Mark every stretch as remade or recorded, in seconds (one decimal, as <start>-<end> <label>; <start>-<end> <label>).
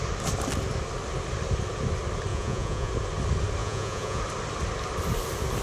0.0-2.3 recorded; 2.3-2.9 remade; 2.9-3.6 recorded; 3.6-4.2 remade; 4.2-5.6 recorded